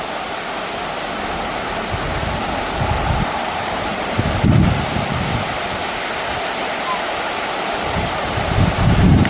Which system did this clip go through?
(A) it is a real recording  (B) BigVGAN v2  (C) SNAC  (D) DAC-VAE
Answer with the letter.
A